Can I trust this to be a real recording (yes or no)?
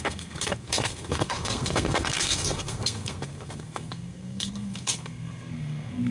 no